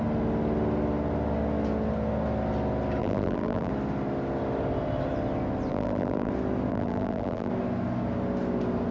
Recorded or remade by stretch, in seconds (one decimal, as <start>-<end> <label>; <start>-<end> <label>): 0.0-3.0 recorded; 3.0-3.7 remade; 3.7-5.7 recorded; 5.7-6.3 remade; 6.3-6.7 recorded; 6.7-7.5 remade; 7.5-8.9 recorded